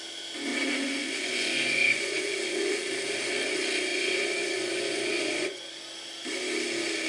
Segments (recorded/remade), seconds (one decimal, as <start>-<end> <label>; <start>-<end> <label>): 0.0-0.5 recorded; 0.5-2.8 remade; 2.8-3.9 recorded; 3.9-5.7 remade; 5.7-7.1 recorded